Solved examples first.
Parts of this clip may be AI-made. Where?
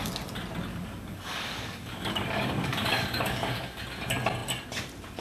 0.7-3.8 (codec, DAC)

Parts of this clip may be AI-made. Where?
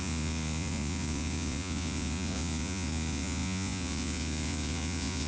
0.0-5.3 (vocoder, Vocos)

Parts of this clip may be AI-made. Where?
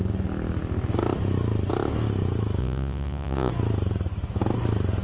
2.6-3.5 (vocoder, Vocos)